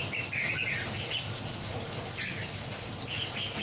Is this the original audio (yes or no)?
yes